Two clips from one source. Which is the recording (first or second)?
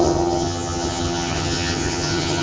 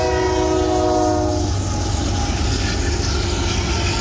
second